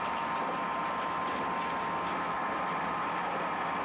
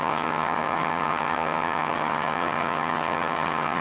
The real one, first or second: first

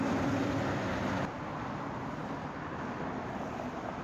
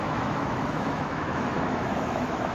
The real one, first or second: first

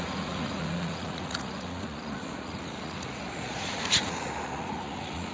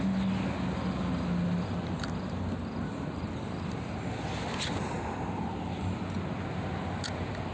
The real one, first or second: second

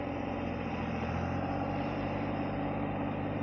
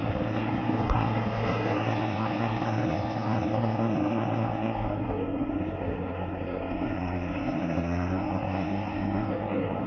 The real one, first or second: first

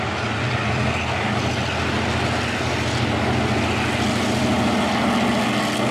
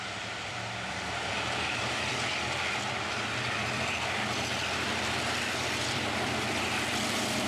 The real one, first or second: first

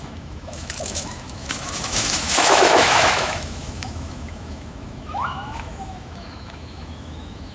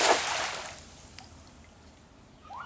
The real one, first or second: second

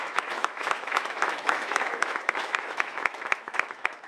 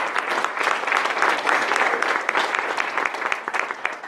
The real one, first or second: second